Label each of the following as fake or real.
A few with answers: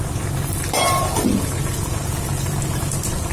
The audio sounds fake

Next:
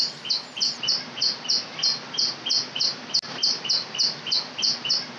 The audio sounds real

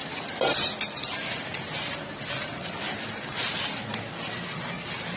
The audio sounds real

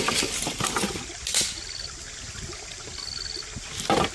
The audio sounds real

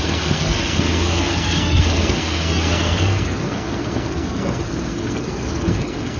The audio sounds fake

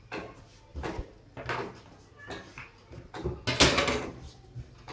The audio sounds real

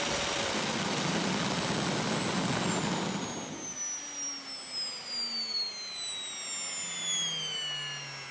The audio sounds real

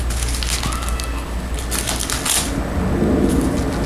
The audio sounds real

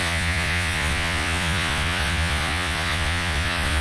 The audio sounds fake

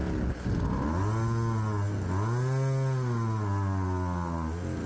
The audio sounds real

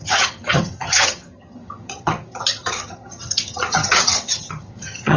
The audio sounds fake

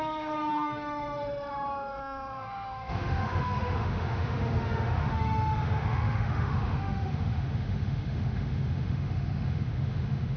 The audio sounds fake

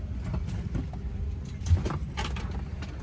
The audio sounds real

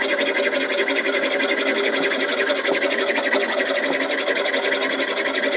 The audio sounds real